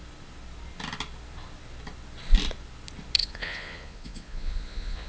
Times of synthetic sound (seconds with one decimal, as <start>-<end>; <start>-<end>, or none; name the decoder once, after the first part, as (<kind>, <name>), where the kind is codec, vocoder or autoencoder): 3.2-5.1 (vocoder, Vocos)